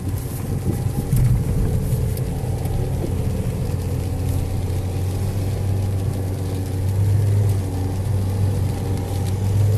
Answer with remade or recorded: recorded